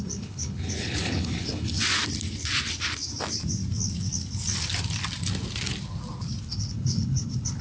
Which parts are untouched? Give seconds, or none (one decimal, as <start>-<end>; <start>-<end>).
1.8-6.4